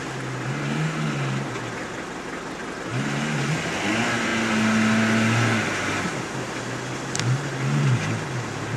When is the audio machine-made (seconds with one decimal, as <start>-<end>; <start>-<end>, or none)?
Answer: none